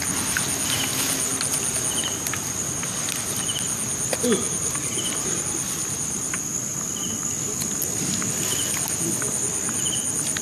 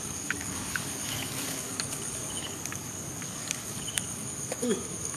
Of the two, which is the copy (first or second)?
second